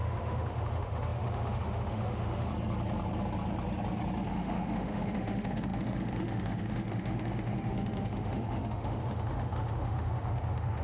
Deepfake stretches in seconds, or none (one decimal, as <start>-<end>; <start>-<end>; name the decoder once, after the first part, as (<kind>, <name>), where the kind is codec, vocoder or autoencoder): 0.0-2.5 (autoencoder, DAC-VAE); 4.3-10.8